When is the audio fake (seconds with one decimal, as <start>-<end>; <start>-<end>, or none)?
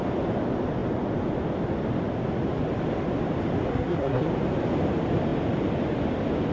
3.7-4.3